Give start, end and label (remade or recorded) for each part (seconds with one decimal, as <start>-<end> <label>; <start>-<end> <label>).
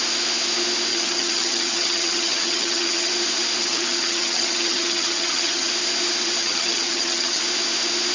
0.0-0.9 recorded; 0.9-3.1 remade; 3.1-3.6 recorded; 3.6-5.7 remade; 5.7-6.4 recorded; 6.4-7.4 remade; 7.4-8.1 recorded